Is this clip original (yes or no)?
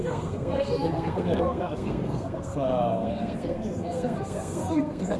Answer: no